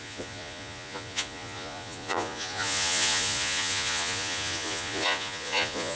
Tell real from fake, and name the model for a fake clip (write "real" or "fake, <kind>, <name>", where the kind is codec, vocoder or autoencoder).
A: fake, vocoder, Vocos